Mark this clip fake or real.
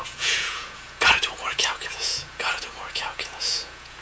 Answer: fake